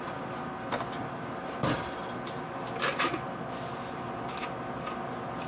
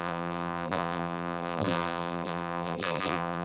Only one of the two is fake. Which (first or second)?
second